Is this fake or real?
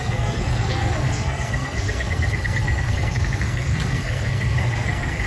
fake